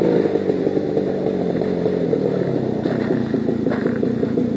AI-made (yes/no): no